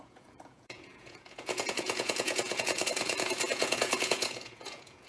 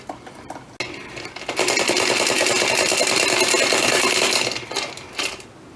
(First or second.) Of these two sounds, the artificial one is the first